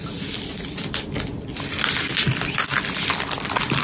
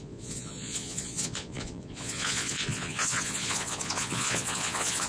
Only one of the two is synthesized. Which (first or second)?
second